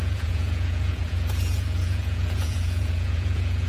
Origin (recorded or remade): remade